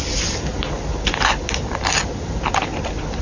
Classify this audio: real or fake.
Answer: real